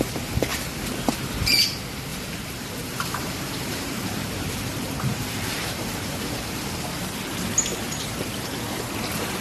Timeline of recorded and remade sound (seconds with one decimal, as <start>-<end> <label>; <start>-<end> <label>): 0.0-2.1 recorded; 2.1-6.9 remade; 6.9-7.7 recorded; 7.7-8.8 remade; 8.8-9.4 recorded